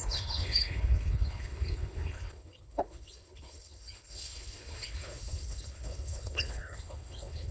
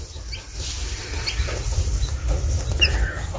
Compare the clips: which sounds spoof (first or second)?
first